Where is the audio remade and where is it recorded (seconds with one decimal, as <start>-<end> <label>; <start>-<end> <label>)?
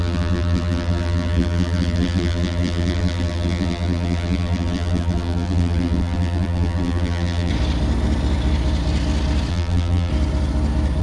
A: 0.0-7.5 remade; 7.5-9.5 recorded; 9.5-10.1 remade; 10.1-11.0 recorded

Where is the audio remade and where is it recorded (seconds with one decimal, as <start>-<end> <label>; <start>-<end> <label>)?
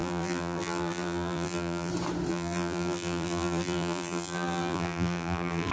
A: 0.0-1.9 remade; 1.9-2.3 recorded; 2.3-5.7 remade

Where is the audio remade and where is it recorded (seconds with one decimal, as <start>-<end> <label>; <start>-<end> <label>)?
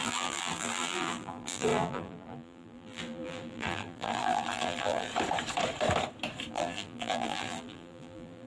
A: 0.0-5.1 remade; 5.1-6.5 recorded; 6.5-8.5 remade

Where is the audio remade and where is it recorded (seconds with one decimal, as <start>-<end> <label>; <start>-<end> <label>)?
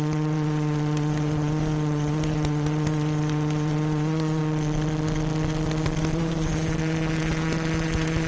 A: 0.0-4.4 remade; 4.4-6.0 recorded; 6.0-8.3 remade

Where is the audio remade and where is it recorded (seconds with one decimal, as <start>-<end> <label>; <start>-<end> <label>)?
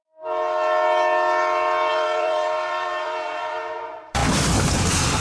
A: 0.0-1.9 recorded; 1.9-4.2 remade; 4.2-5.2 recorded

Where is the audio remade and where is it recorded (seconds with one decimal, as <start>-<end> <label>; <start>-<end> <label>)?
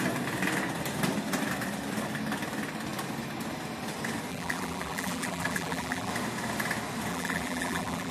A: 0.0-4.3 recorded; 4.3-6.1 remade; 6.1-7.1 recorded; 7.1-8.1 remade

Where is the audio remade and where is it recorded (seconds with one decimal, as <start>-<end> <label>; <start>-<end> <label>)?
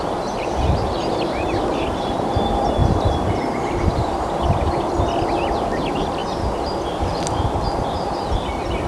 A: 0.0-6.2 remade; 6.2-7.3 recorded; 7.3-8.9 remade